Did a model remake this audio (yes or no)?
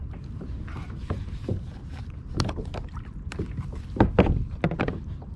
no